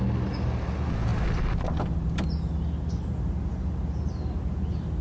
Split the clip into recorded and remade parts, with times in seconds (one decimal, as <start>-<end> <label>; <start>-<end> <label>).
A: 0.0-5.0 recorded